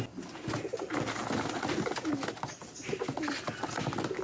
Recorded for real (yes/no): yes